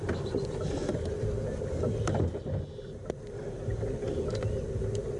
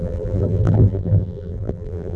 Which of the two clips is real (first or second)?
first